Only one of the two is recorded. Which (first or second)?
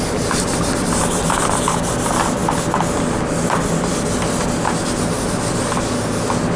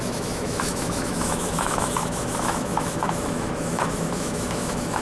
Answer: first